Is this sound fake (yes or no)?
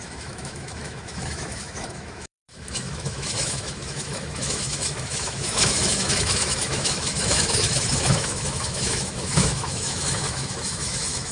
yes